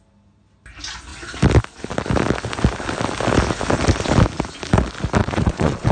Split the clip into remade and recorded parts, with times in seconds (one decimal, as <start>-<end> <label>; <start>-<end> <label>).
0.0-5.2 recorded; 5.2-5.9 remade